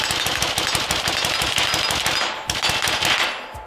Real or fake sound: real